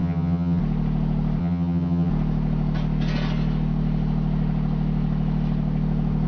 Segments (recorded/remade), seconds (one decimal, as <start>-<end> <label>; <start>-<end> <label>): 0.0-0.6 remade; 0.6-1.4 recorded; 1.4-2.1 remade; 2.1-6.3 recorded